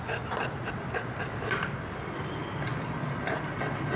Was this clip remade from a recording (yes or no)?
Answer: no